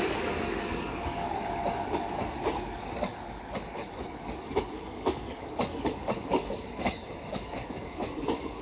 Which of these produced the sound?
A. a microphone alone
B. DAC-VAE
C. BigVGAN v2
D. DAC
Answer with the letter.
D